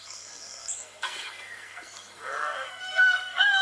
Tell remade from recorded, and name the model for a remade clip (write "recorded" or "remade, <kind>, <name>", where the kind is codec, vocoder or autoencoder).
remade, codec, SNAC